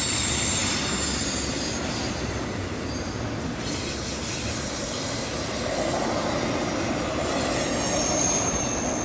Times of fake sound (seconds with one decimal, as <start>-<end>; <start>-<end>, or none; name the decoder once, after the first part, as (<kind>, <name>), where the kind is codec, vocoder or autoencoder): none